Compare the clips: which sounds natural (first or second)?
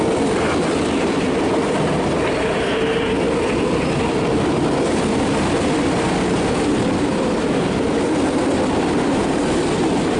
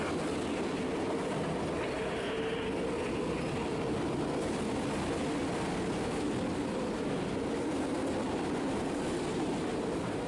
second